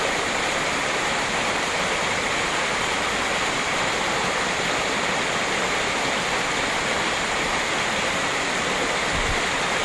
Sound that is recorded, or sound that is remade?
recorded